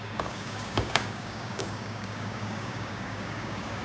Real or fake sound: fake